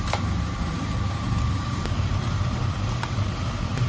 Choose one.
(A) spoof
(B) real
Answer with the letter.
A